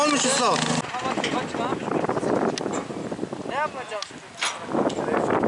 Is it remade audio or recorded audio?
recorded